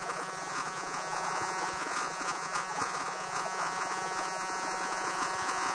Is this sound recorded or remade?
remade